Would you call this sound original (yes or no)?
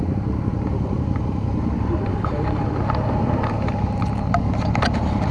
yes